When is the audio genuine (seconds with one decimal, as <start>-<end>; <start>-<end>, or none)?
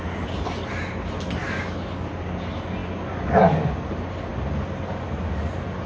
0.0-1.4; 2.1-5.9